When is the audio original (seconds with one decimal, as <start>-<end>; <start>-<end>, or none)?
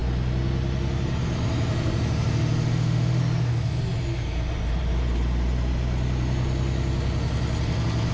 0.0-2.7; 3.2-8.1